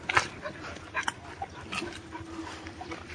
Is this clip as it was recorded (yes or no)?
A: yes